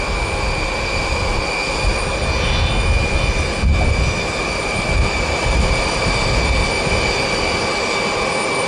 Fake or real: real